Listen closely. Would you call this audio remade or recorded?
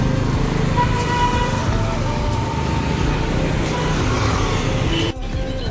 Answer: recorded